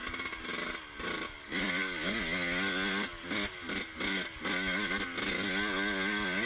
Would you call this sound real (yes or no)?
yes